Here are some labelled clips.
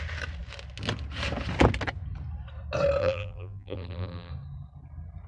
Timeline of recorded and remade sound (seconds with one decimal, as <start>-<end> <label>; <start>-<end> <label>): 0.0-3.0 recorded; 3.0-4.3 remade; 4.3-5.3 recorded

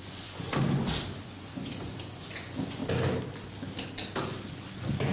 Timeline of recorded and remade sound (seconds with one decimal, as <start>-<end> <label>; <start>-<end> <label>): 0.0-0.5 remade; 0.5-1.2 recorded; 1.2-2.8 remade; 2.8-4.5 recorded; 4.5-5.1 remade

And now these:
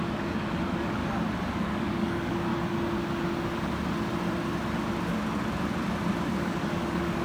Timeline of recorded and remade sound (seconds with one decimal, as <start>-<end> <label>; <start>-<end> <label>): 0.0-1.0 remade; 1.0-1.5 recorded; 1.5-2.5 remade; 2.5-6.3 recorded; 6.3-7.2 remade

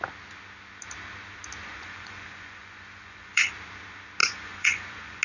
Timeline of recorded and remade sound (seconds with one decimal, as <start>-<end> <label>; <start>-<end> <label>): 0.0-1.6 recorded; 1.6-3.5 remade; 3.5-4.2 recorded; 4.2-5.2 remade